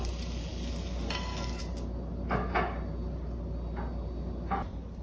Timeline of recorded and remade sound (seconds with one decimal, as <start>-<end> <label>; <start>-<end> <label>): 0.0-5.0 recorded